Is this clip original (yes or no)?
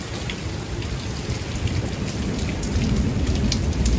no